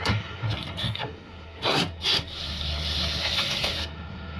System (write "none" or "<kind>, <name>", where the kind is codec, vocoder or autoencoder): codec, SNAC